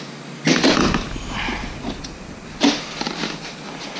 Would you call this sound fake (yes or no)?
no